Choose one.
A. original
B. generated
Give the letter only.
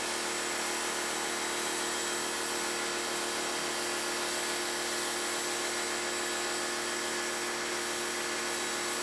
A